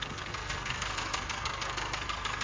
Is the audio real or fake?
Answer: fake